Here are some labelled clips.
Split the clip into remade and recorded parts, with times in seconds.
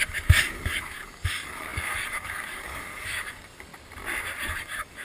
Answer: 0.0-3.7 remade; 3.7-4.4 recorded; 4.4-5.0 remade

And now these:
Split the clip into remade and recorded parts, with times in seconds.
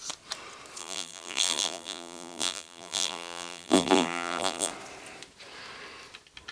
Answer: 0.0-0.8 recorded; 0.8-4.7 remade; 4.7-6.5 recorded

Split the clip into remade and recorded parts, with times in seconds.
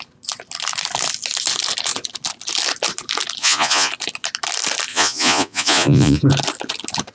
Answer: 0.0-3.4 recorded; 3.4-3.9 remade; 3.9-4.9 recorded; 4.9-6.2 remade; 6.2-7.1 recorded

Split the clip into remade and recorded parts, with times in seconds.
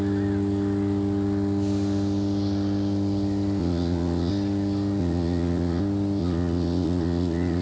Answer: 0.0-3.6 recorded; 3.6-4.3 remade; 4.3-5.0 recorded; 5.0-5.8 remade; 5.8-6.2 recorded; 6.2-7.6 remade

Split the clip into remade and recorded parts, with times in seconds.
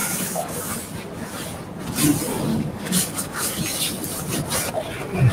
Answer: 0.0-0.7 remade; 0.7-2.5 recorded; 2.5-3.6 remade; 3.6-5.3 recorded